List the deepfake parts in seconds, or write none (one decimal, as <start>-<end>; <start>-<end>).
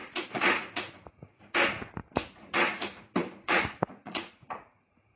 0.0-1.5; 2.0-5.2